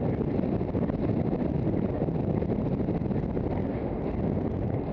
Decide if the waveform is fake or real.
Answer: real